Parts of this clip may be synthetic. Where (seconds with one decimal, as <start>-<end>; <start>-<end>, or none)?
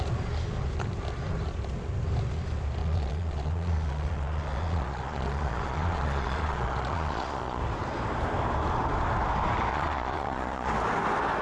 2.8-7.6; 9.7-10.7